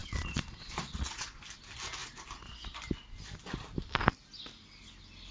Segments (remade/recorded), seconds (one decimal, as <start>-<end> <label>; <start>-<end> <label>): 0.0-1.4 remade; 1.4-5.3 recorded